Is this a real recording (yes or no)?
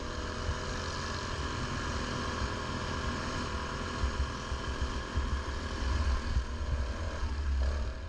yes